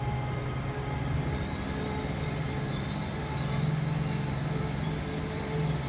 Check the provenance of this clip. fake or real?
real